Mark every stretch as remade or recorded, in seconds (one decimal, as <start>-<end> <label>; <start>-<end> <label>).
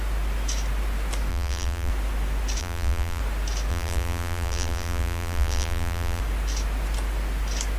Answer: 0.0-1.3 recorded; 1.3-1.9 remade; 1.9-2.6 recorded; 2.6-3.2 remade; 3.2-3.7 recorded; 3.7-6.2 remade; 6.2-7.8 recorded